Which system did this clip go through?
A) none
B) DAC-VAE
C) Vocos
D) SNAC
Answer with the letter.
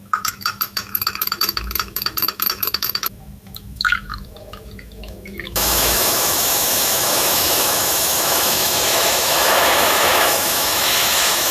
B